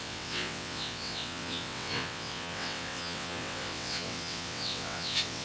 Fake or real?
fake